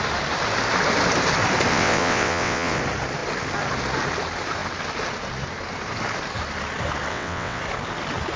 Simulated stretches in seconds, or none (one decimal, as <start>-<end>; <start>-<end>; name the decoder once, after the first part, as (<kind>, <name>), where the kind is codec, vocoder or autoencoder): 1.7-2.8 (vocoder, WaveNeXt); 7.1-7.6